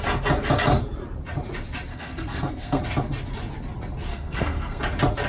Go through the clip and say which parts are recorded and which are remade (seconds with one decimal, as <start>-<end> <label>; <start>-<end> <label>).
0.0-1.9 recorded; 1.9-2.8 remade; 2.8-4.1 recorded; 4.1-4.8 remade; 4.8-5.3 recorded